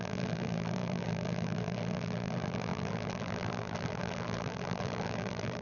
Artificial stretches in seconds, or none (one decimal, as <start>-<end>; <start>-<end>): 0.0-5.6